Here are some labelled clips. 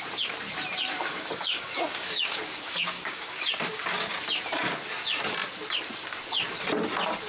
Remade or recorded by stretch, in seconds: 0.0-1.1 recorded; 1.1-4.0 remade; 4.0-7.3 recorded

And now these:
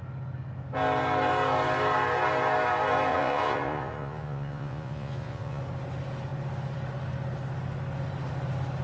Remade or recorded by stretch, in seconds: 0.0-3.1 recorded; 3.1-5.6 remade; 5.6-8.8 recorded

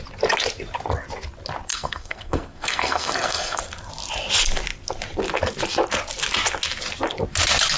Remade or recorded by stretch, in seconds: 0.0-1.7 recorded; 1.7-3.6 remade; 3.6-7.8 recorded

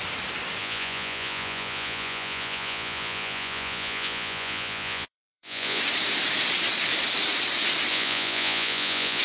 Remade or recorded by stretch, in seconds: 0.0-0.6 recorded; 0.6-5.8 remade; 5.8-7.9 recorded; 7.9-9.2 remade

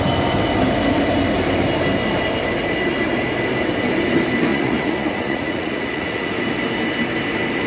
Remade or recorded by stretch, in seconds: 0.0-4.5 recorded; 4.5-6.3 remade; 6.3-7.7 recorded

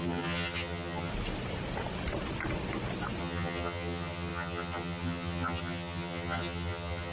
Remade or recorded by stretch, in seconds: 0.0-1.1 remade; 1.1-3.2 recorded; 3.2-7.1 remade

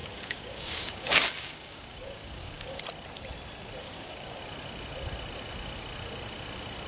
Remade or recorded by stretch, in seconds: 0.0-2.8 remade; 2.8-3.8 recorded; 3.8-4.4 remade; 4.4-6.9 recorded

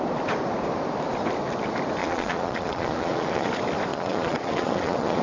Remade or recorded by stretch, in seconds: 0.0-2.0 recorded; 2.0-3.5 remade; 3.5-3.9 recorded; 3.9-5.2 remade